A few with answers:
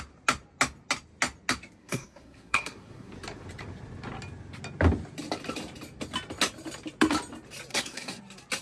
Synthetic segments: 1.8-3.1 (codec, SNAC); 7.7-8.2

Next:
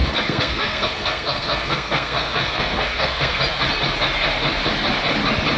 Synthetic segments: 0.0-3.4 (codec, SNAC)

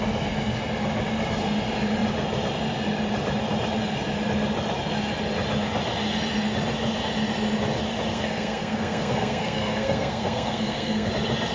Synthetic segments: 8.1-11.1 (codec, SNAC)

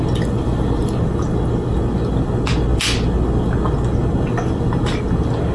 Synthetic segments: none

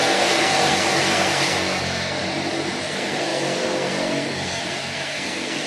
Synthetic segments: 0.0-2.2 (codec, SNAC); 2.8-5.7

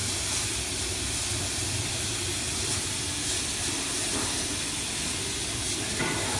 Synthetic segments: none

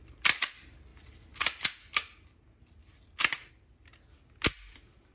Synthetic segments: none

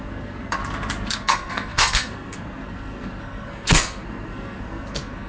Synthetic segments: 0.0-0.6 (codec, SNAC); 1.1-5.3